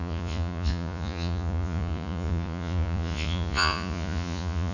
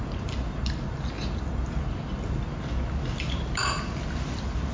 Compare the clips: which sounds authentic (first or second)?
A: second